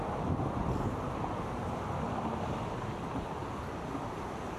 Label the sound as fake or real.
real